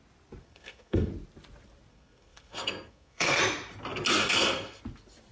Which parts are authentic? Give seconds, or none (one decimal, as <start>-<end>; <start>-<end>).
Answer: 0.0-0.4; 1.1-1.9; 3.4-4.2; 4.8-5.3